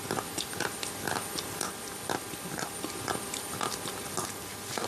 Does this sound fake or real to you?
real